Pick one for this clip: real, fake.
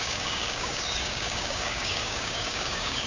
fake